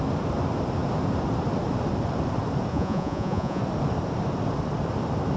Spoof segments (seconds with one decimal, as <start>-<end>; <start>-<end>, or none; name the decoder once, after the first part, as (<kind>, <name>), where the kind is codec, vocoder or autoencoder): 2.7-3.6 (vocoder, Vocos)